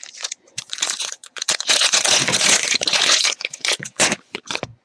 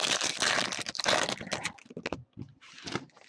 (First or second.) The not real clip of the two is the first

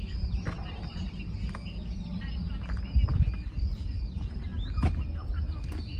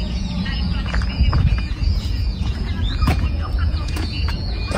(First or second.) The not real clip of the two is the second